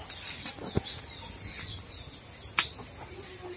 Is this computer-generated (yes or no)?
no